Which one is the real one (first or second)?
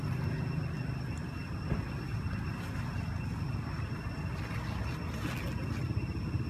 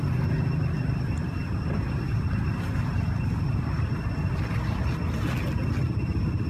first